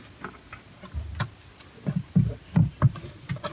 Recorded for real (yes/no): yes